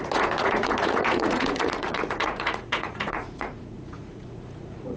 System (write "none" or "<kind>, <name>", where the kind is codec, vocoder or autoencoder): vocoder, Vocos